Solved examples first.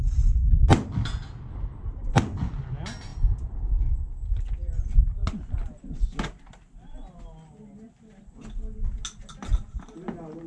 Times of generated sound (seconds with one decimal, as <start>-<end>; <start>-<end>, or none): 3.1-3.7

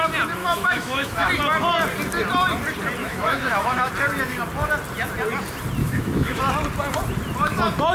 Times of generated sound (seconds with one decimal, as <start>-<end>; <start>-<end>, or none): 0.4-1.3; 3.0-3.9; 5.8-6.4

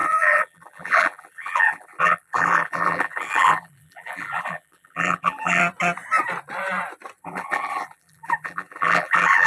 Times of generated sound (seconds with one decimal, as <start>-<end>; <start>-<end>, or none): 0.0-5.6; 7.2-9.5

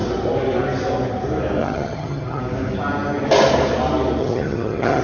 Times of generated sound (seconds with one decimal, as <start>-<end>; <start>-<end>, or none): 1.6-2.4; 4.2-5.0

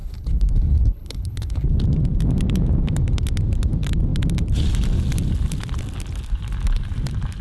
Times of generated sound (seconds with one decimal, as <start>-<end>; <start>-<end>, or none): 0.0-1.8

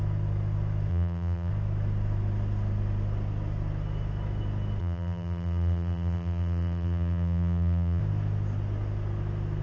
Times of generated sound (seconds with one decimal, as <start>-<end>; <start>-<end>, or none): 0.9-1.5; 4.8-8.0

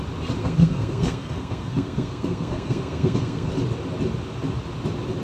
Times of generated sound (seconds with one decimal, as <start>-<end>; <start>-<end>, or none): 0.4-3.5